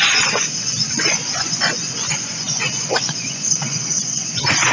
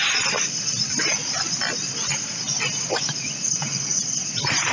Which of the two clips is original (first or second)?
second